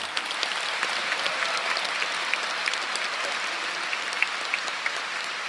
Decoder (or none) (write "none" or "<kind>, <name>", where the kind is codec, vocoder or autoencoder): vocoder, BigVGAN v2